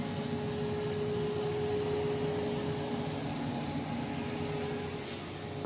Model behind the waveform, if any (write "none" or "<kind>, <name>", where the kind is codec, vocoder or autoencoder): none